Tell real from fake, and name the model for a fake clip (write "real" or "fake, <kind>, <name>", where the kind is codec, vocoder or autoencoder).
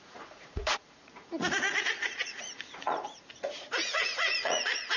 fake, vocoder, Vocos